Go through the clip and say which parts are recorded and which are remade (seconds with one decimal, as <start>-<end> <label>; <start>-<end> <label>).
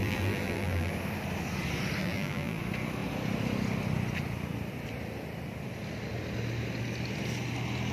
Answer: 0.0-0.9 remade; 0.9-2.0 recorded; 2.0-2.6 remade; 2.6-7.9 recorded